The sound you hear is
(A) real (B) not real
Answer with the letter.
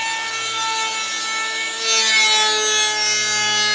A